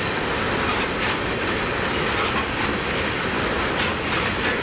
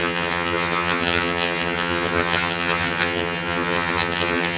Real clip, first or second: first